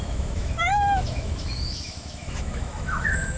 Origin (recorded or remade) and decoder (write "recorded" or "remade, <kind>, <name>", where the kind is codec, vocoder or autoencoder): remade, autoencoder, DAC-VAE